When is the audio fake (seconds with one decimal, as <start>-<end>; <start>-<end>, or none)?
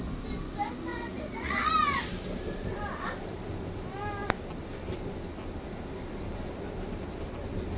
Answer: 0.9-1.7